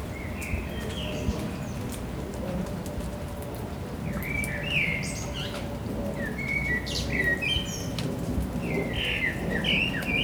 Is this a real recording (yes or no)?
yes